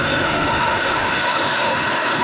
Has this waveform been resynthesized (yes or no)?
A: yes